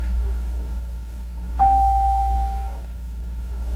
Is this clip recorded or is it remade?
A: remade